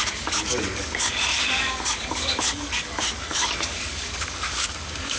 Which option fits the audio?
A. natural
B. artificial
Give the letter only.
B